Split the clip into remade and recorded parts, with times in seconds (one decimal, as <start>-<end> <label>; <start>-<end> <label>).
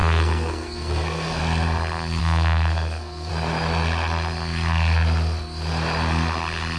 0.0-1.4 remade; 1.4-2.2 recorded; 2.2-3.3 remade; 3.3-6.8 recorded